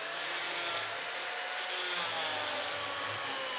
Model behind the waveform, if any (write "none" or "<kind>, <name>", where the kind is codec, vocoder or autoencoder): none